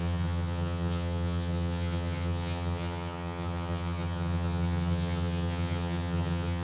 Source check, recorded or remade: remade